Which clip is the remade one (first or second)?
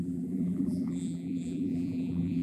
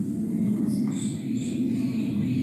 first